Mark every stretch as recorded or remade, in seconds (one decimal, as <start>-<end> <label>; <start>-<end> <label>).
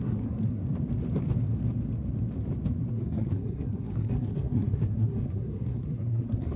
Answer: 0.0-0.6 remade; 0.6-2.9 recorded; 2.9-6.6 remade